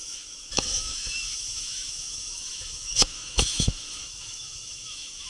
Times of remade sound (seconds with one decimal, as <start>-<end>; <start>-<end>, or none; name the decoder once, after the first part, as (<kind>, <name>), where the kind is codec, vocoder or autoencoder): 0.0-5.3 (autoencoder, DAC-VAE)

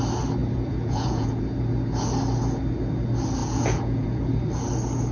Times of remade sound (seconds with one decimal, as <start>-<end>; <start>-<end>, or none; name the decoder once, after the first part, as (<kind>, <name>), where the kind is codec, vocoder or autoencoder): 0.4-1.4 (vocoder, Vocos); 3.4-4.3

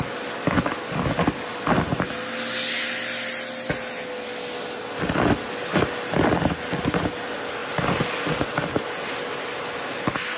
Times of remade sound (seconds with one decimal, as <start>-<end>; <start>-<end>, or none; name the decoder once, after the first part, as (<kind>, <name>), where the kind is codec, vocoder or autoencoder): none

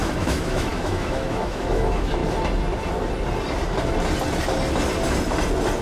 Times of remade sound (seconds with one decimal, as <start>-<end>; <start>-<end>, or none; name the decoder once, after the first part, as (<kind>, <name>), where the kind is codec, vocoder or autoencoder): 0.0-2.2 (autoencoder, DAC-VAE)

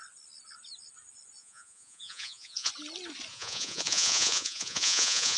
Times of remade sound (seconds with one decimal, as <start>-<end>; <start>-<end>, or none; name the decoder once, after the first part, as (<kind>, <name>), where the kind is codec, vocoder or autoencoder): 1.4-2.7 (vocoder, Vocos); 3.3-5.4

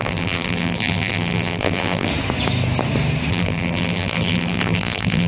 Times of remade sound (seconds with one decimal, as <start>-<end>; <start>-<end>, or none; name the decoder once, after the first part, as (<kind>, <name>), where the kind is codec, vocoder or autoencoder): 0.0-2.1 (vocoder, BigVGAN v2); 3.3-5.3

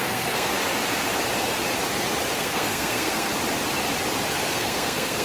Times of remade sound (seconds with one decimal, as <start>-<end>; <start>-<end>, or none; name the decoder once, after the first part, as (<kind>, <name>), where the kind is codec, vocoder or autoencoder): 0.0-0.5 (codec, SNAC); 2.4-3.3; 4.3-5.2

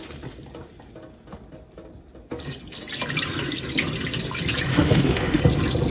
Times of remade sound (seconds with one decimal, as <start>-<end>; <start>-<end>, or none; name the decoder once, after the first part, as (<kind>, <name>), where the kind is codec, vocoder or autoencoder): 4.7-5.4 (autoencoder, DAC-VAE)